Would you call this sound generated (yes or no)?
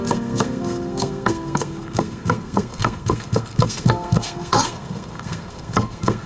yes